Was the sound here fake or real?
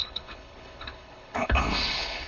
fake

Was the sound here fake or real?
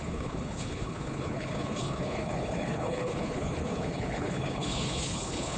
fake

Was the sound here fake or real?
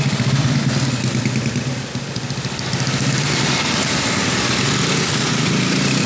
real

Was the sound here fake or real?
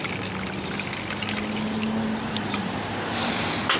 real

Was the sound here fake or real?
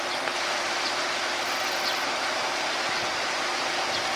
real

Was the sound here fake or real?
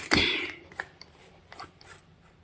fake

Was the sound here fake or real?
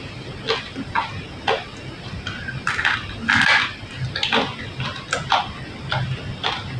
real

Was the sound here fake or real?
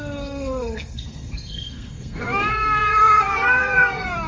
fake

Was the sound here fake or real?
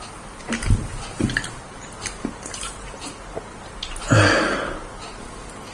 real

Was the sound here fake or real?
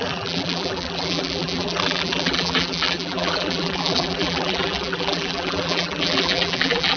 fake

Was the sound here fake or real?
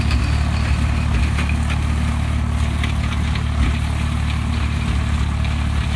real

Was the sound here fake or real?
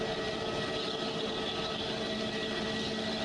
real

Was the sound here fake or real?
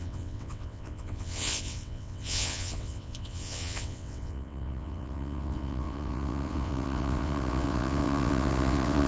fake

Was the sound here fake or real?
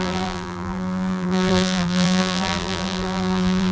fake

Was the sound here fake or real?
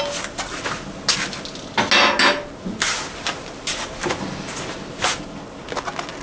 real